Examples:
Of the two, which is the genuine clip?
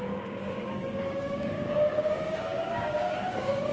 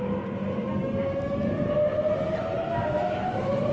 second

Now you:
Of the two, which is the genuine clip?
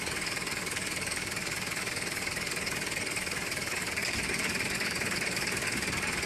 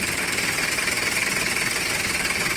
second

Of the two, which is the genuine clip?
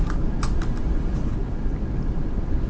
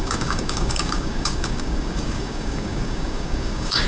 first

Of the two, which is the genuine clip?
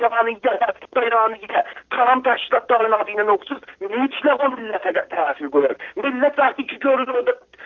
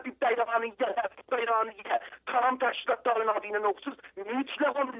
second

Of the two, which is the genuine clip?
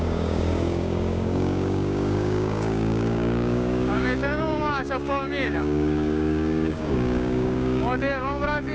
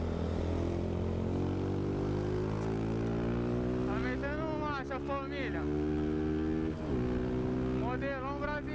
second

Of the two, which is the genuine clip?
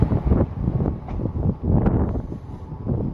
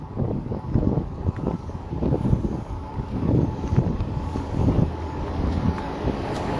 first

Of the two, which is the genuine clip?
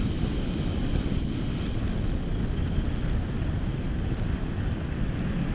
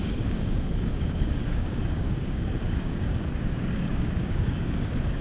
first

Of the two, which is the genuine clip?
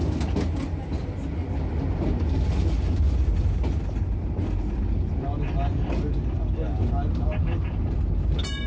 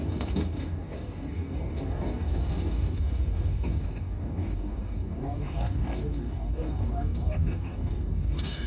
first